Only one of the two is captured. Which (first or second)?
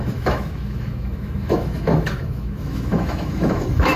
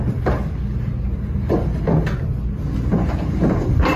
second